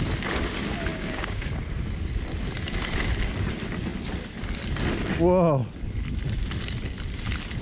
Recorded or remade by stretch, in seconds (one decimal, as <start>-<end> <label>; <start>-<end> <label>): 0.0-0.9 recorded; 0.9-1.5 remade; 1.5-7.6 recorded